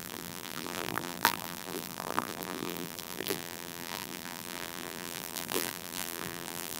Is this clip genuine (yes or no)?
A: no